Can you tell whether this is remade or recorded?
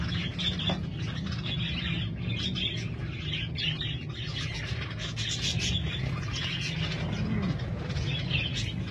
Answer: recorded